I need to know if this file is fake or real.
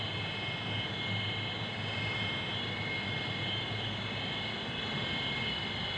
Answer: real